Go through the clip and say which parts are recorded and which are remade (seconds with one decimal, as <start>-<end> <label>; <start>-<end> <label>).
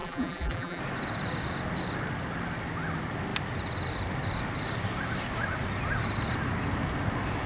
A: 0.0-0.8 remade; 0.8-7.5 recorded